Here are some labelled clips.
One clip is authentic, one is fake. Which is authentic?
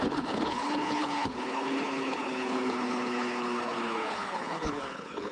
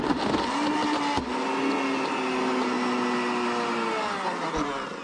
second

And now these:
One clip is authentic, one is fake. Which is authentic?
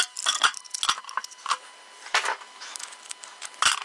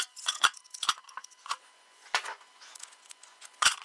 first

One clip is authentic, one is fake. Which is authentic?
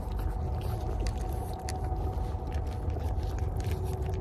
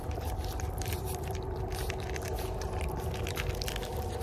first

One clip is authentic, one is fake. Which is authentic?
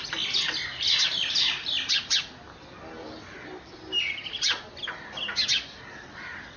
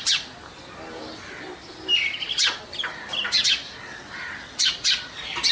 first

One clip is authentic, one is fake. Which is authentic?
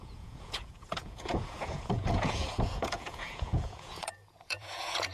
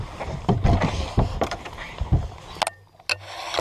second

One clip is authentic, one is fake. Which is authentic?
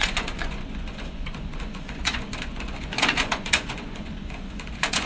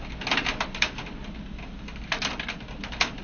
second